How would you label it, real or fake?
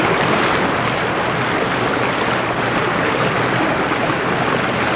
real